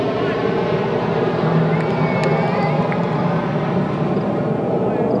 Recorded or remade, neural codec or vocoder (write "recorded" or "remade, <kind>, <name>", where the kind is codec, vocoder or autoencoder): recorded